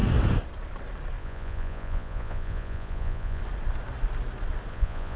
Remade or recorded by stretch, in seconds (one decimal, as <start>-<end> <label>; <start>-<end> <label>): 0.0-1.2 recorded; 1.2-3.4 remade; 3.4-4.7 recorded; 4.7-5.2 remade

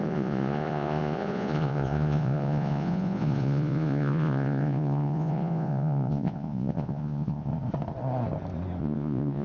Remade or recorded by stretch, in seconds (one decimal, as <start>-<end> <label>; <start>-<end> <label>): 0.0-7.5 remade; 7.5-8.8 recorded; 8.8-9.4 remade

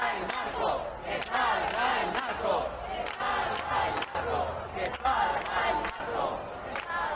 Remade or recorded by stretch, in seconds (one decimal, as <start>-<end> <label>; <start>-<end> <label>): 0.0-7.2 recorded

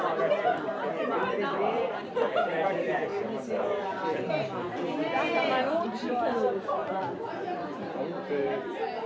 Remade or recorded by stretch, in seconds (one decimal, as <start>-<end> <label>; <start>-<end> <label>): 0.0-9.1 recorded